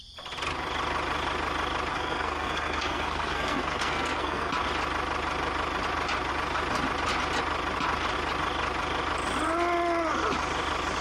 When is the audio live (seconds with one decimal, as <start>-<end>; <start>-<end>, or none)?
0.0-1.9; 4.5-11.0

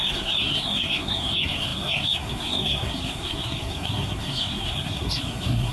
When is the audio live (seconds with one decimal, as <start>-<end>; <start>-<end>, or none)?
none

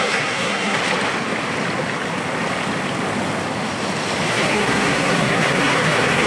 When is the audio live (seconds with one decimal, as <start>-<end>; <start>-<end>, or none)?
0.8-4.3